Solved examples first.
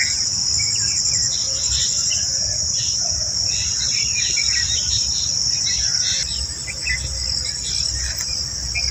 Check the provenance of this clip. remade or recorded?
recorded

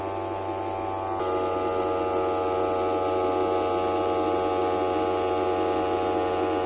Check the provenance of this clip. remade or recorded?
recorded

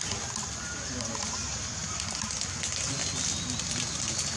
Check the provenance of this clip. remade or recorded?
recorded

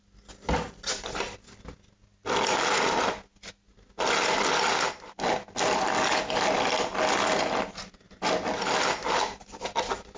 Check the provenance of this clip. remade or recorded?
recorded